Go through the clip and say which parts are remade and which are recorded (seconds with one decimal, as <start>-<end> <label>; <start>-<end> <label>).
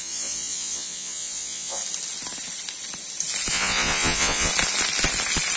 0.0-1.8 remade; 1.8-3.5 recorded; 3.5-4.5 remade; 4.5-5.6 recorded